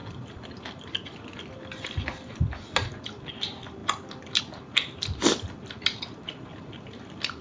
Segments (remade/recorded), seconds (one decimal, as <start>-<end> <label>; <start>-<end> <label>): 0.0-7.4 recorded